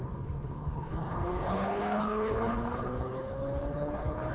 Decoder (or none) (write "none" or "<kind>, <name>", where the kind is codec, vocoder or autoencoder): codec, HILCodec